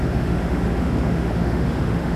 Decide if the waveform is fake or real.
fake